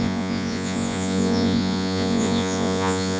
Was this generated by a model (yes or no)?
yes